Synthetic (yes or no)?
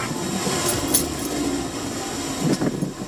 no